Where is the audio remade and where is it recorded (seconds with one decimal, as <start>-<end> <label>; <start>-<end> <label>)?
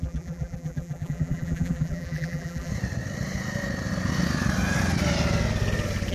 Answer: 0.0-2.7 remade; 2.7-6.1 recorded